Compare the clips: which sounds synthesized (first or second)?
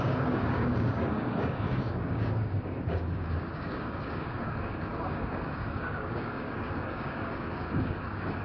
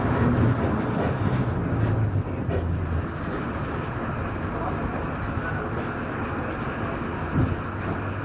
first